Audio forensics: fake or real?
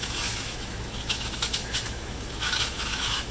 fake